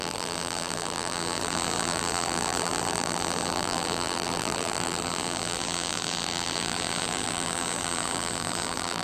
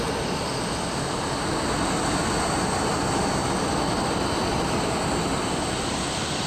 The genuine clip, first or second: second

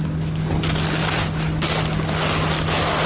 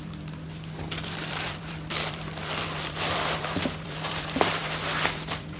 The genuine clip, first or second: first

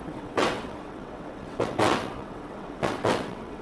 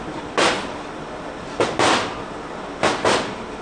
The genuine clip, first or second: second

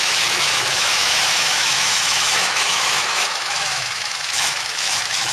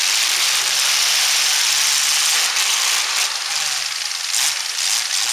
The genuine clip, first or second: second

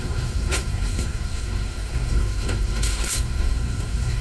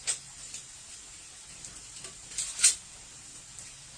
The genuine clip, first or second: second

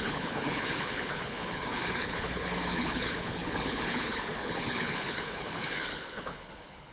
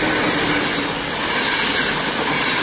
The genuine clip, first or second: second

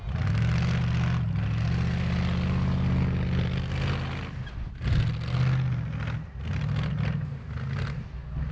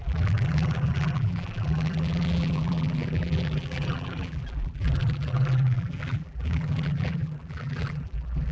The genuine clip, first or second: first